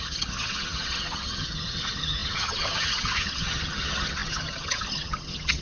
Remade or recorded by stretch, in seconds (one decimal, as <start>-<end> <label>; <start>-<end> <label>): 0.0-5.6 remade